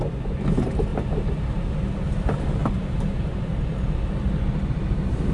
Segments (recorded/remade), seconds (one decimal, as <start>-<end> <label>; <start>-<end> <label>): 0.0-0.9 recorded; 0.9-1.7 remade; 1.7-2.6 recorded; 2.6-3.6 remade; 3.6-5.3 recorded